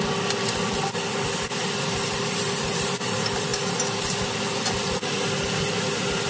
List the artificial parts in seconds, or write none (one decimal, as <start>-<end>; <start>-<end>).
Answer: none